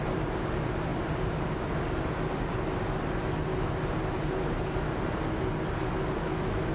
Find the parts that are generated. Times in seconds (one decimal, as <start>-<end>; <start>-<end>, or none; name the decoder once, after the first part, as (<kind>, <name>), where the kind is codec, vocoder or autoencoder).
none